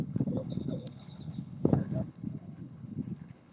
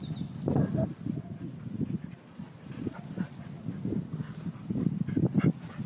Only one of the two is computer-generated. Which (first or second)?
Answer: first